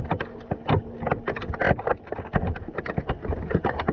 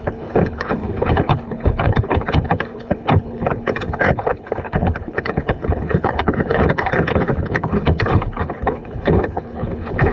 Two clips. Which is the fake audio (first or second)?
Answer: second